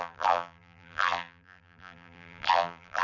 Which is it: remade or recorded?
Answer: remade